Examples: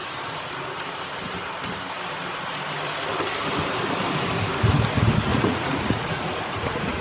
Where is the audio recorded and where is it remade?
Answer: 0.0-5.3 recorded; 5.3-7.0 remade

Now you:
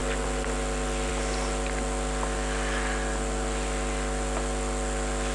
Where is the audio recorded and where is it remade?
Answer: 0.0-5.3 recorded

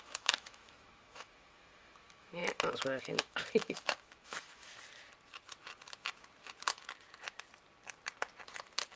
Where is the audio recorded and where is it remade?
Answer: 0.0-2.4 remade; 2.4-3.0 recorded; 3.0-4.7 remade; 4.7-9.0 recorded

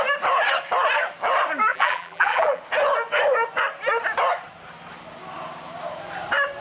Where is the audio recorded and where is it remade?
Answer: 0.0-1.7 recorded; 1.7-2.6 remade; 2.6-6.6 recorded

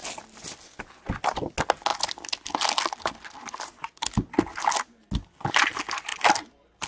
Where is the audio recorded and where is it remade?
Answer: 0.0-6.9 recorded

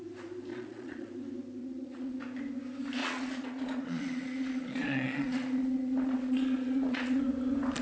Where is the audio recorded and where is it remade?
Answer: 0.0-0.5 recorded; 0.5-1.1 remade; 1.1-1.6 recorded; 1.6-2.2 remade; 2.2-3.0 recorded; 3.0-7.2 remade; 7.2-7.8 recorded

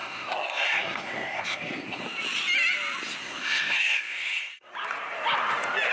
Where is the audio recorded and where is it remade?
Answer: 0.0-2.0 remade; 2.0-3.2 recorded; 3.2-4.7 remade; 4.7-5.9 recorded

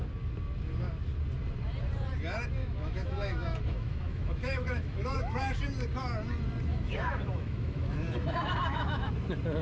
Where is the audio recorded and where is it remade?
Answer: 0.0-2.6 recorded; 2.6-5.6 remade; 5.6-6.7 recorded; 6.7-9.1 remade; 9.1-9.6 recorded